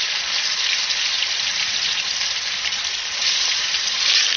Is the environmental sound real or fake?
real